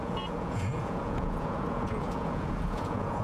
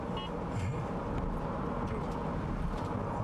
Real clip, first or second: second